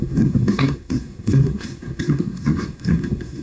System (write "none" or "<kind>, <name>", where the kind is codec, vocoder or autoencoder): codec, SNAC